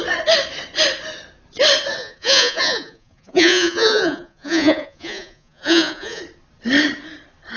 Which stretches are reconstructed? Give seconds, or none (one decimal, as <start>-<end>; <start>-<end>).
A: 2.0-6.2